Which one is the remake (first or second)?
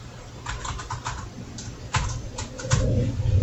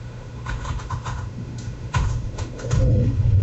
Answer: second